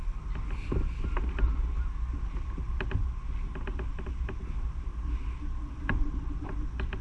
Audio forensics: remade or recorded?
recorded